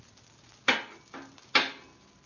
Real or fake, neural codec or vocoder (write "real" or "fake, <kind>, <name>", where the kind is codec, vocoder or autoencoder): real